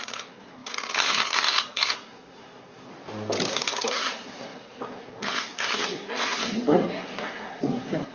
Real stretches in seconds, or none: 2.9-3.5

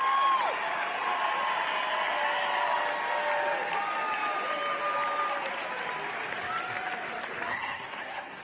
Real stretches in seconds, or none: 0.0-7.5

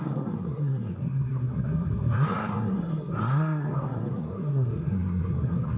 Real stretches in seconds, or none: none

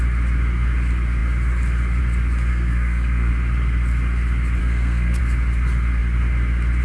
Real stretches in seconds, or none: 0.0-2.5; 3.3-4.6; 5.2-6.8

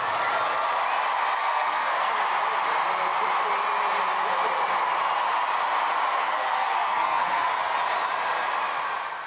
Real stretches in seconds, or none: 0.0-1.4; 2.1-6.2; 7.5-9.3

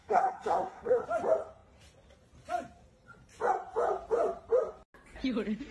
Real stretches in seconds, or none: 1.0-5.7

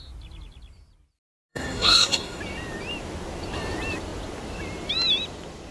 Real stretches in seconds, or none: 0.0-1.5; 2.4-5.7